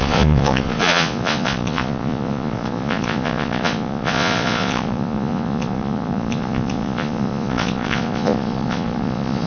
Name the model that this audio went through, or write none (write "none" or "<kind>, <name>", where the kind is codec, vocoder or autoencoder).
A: vocoder, Vocos